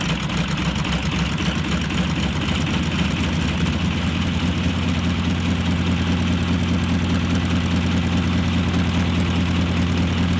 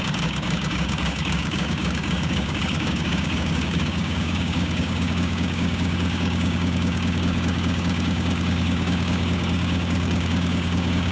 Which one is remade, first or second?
second